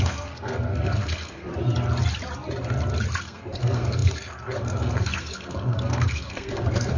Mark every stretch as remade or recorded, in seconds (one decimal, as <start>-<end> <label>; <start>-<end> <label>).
0.0-1.5 remade; 1.5-3.2 recorded; 3.2-7.0 remade

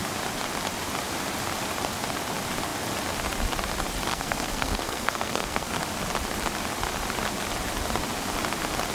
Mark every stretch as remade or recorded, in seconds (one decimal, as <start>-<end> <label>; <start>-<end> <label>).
0.0-4.1 recorded; 4.1-5.7 remade; 5.7-8.9 recorded

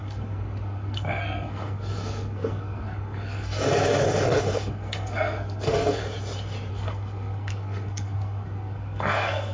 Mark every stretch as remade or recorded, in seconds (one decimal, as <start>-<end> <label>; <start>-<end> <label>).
0.0-6.0 remade; 6.0-6.7 recorded; 6.7-9.5 remade

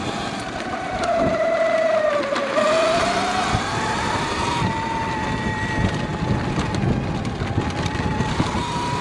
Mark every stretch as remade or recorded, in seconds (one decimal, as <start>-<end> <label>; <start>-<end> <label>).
0.0-9.0 recorded